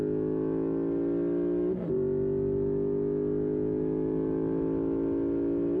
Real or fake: real